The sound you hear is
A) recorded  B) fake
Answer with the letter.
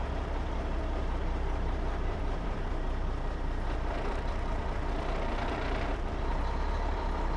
B